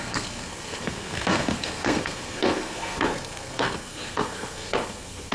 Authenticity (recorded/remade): remade